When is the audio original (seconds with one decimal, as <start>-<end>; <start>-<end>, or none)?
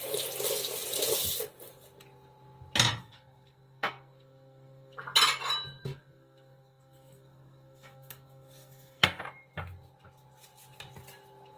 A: 0.0-3.0; 5.0-5.8; 9.2-11.6